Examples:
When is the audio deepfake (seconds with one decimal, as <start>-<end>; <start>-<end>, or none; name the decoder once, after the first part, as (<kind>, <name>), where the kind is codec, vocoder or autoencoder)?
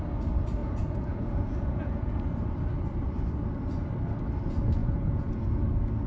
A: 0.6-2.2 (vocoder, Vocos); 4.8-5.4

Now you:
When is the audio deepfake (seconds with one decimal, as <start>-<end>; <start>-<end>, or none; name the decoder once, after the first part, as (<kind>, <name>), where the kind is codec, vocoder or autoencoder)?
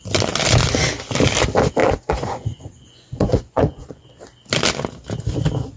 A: 1.8-4.1 (vocoder, Vocos)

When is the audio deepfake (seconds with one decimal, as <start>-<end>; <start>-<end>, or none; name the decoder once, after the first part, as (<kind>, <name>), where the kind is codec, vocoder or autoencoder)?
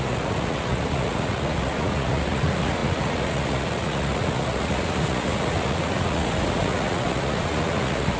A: 0.0-8.2 (vocoder, Vocos)